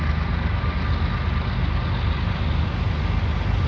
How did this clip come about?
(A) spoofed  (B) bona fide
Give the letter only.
B